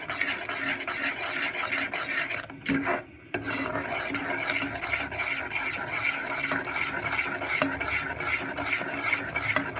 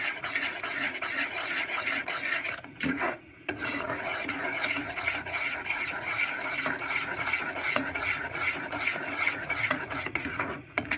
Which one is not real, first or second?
second